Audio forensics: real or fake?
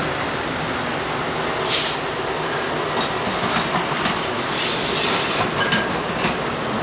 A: real